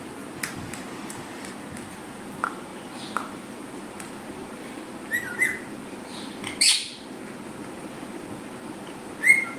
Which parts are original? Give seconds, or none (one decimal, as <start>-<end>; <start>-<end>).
0.0-9.6